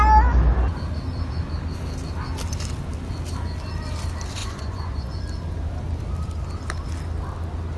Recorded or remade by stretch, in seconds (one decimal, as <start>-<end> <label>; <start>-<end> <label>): 0.0-4.4 recorded; 4.4-5.2 remade; 5.2-7.8 recorded